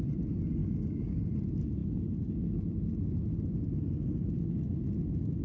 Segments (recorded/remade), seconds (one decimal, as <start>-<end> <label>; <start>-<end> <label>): 0.0-0.6 recorded; 0.6-1.2 remade; 1.2-5.4 recorded